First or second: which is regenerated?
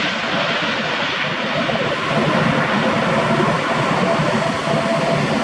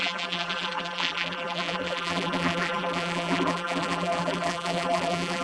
second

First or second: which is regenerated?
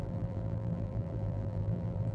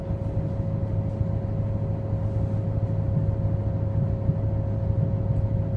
first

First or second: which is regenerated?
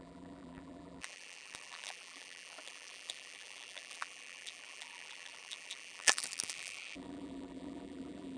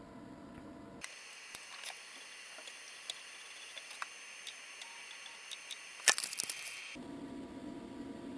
first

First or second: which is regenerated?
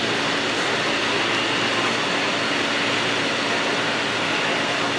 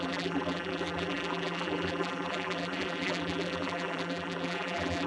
second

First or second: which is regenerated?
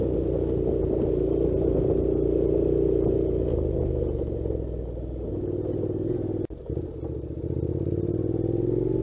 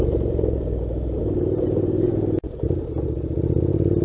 second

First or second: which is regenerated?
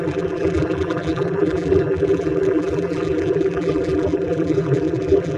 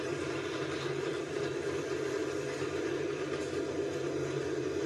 first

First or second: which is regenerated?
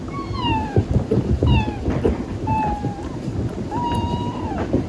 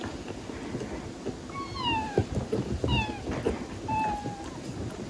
first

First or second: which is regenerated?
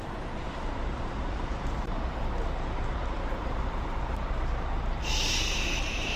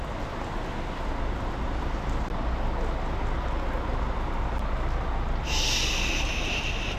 first